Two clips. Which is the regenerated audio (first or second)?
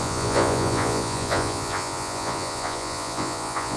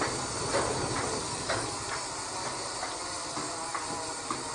first